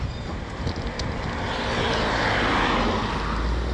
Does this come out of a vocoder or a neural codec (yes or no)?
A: no